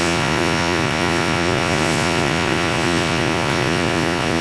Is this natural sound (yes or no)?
no